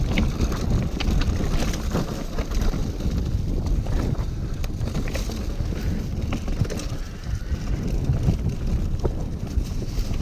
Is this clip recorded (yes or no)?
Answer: yes